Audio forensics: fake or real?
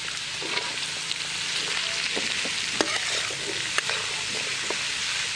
real